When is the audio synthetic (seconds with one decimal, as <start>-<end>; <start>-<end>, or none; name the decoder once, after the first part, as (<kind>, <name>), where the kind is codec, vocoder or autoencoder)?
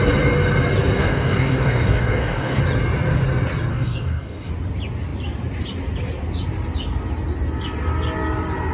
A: 1.0-2.6 (codec, DAC); 3.7-4.5